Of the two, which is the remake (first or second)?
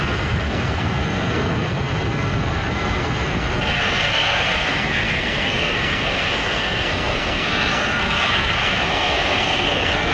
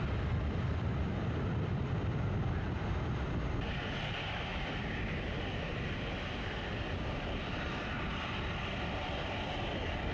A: first